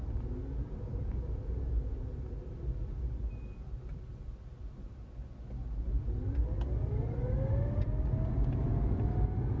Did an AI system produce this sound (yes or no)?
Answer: no